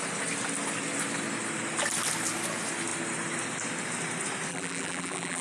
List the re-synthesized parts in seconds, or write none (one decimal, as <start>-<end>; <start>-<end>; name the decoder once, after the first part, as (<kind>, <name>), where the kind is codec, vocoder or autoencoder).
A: 4.5-5.4 (vocoder, BigVGAN v2)